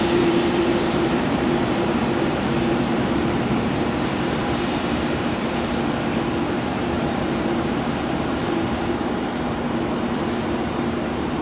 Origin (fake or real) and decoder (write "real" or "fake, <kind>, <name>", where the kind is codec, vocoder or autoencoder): fake, vocoder, BigVGAN v2